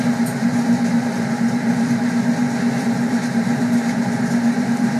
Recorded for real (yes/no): no